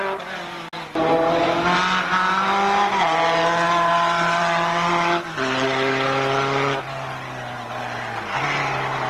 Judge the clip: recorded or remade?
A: recorded